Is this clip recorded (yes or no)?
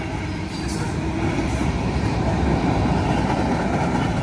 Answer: yes